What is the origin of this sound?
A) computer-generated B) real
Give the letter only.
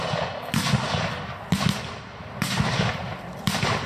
B